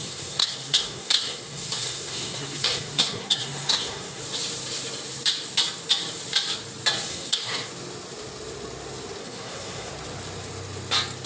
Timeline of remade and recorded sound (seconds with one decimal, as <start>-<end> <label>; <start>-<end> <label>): 0.0-4.2 remade; 4.2-7.1 recorded; 7.1-7.7 remade; 7.7-9.2 recorded; 9.2-9.9 remade; 9.9-11.3 recorded